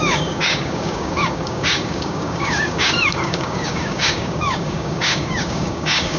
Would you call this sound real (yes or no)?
no